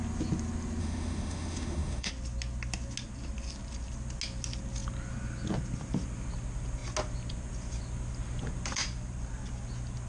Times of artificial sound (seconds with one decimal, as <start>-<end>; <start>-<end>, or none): 0.8-2.1